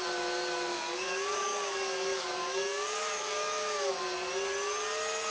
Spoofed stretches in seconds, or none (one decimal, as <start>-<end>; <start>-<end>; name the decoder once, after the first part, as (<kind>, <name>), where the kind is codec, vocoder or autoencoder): 0.7-3.9 (codec, DAC)